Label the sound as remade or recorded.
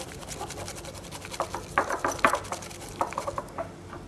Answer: recorded